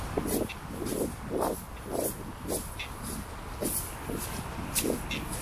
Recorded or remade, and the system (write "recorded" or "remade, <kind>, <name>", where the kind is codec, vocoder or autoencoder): recorded